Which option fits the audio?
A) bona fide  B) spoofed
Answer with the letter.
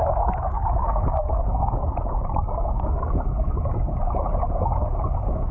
B